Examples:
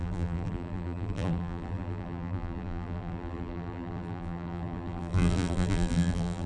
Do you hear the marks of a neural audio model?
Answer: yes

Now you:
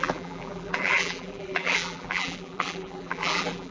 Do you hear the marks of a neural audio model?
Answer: yes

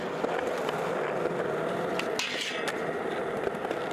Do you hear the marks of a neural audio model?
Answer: no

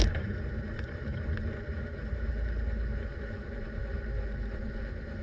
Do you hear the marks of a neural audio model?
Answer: yes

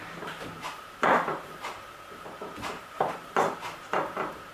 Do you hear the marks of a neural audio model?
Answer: yes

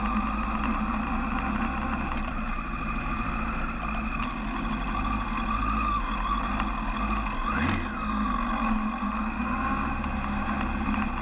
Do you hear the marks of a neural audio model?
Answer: no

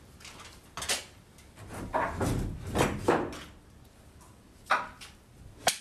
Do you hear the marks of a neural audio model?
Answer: no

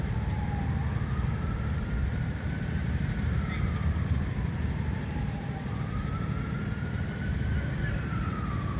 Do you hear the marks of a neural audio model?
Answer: yes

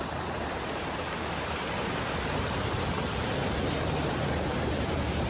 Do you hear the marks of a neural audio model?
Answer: yes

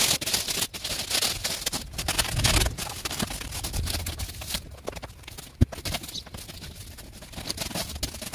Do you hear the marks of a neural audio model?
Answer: no